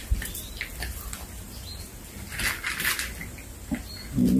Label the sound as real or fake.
real